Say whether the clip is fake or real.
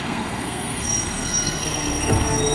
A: fake